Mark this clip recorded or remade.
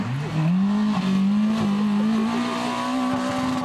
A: recorded